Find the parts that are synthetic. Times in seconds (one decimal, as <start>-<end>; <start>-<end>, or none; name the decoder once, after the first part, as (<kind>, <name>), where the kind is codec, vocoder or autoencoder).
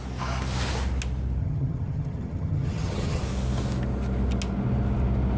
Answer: 1.4-3.2 (vocoder, HiFi-GAN)